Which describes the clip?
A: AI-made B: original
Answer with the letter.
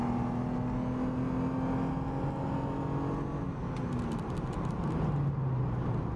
B